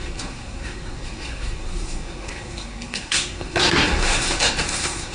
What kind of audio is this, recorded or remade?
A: remade